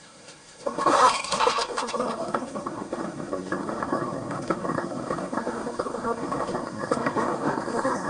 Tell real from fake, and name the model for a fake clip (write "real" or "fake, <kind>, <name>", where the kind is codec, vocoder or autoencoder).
fake, codec, SNAC